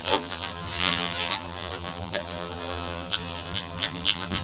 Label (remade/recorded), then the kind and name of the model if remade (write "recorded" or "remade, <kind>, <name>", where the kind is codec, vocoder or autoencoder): remade, vocoder, BigVGAN v2